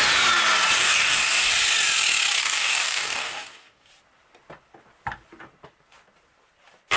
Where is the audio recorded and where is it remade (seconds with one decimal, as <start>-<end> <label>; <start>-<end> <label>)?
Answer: 0.0-0.8 recorded; 0.8-1.5 remade; 1.5-2.4 recorded; 2.4-3.9 remade; 3.9-7.0 recorded